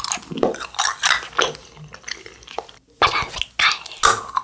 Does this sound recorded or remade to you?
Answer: recorded